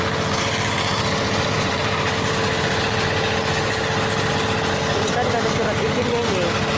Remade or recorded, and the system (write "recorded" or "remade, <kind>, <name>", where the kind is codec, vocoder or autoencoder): recorded